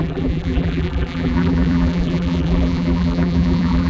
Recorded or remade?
remade